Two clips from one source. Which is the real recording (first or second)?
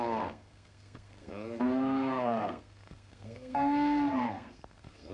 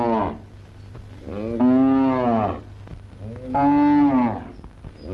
second